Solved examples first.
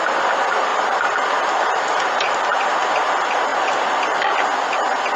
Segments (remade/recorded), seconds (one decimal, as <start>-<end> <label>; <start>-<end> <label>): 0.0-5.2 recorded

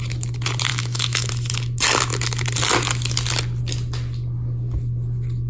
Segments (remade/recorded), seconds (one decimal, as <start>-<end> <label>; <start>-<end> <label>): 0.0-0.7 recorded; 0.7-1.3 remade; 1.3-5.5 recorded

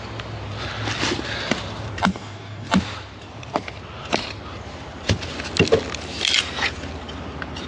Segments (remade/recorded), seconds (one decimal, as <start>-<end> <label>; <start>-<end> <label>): 0.0-2.1 recorded; 2.1-2.7 remade; 2.7-7.7 recorded

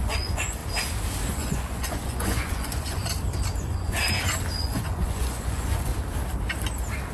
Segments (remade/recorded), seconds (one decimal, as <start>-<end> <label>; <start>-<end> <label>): 0.0-0.6 remade; 0.6-1.3 recorded; 1.3-3.0 remade; 3.0-3.6 recorded; 3.6-4.0 remade; 4.0-4.6 recorded; 4.6-5.9 remade; 5.9-7.1 recorded

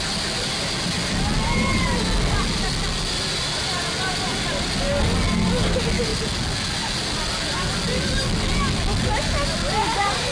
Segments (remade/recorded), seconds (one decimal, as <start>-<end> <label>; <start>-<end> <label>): 0.0-10.3 recorded

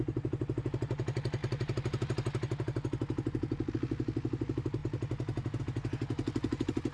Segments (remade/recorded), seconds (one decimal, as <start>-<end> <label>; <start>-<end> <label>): 0.0-6.9 recorded